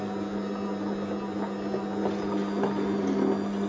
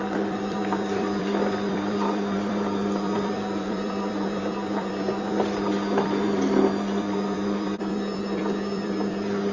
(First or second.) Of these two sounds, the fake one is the second